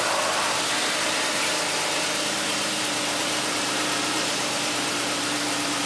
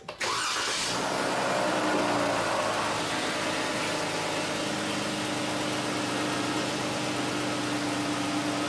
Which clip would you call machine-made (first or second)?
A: first